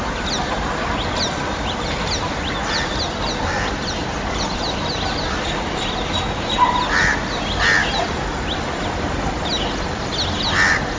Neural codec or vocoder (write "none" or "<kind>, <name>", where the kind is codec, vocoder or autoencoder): none